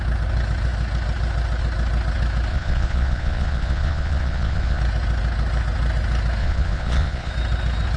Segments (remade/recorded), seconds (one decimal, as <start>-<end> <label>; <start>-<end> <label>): 0.0-2.5 recorded; 2.5-4.8 remade; 4.8-6.4 recorded; 6.4-7.3 remade; 7.3-8.0 recorded